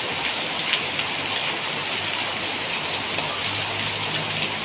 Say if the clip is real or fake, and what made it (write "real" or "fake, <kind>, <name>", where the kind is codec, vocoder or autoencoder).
real